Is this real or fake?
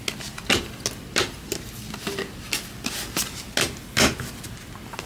real